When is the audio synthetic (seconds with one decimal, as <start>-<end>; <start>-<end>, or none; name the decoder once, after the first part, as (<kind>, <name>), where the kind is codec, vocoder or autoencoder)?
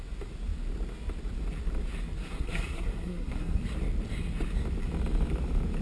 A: 2.2-3.6 (codec, SNAC)